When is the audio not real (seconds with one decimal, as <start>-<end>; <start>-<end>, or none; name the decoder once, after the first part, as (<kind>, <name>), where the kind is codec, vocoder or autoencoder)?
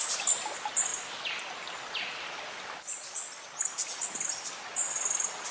none